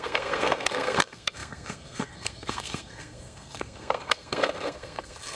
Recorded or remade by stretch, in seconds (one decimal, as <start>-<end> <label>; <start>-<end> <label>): 0.0-5.4 remade